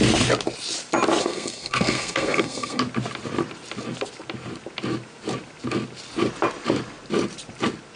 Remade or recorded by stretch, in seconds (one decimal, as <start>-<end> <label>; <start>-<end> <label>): 0.0-1.2 recorded; 1.2-2.8 remade; 2.8-8.0 recorded

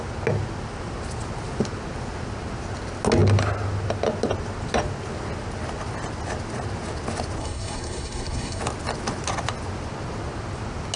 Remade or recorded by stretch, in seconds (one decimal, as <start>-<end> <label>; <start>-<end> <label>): 0.0-7.4 recorded; 7.4-8.6 remade; 8.6-11.0 recorded

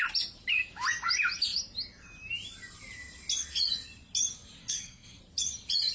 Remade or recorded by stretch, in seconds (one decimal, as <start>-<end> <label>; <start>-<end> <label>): 0.0-4.6 recorded; 4.6-5.2 remade; 5.2-5.9 recorded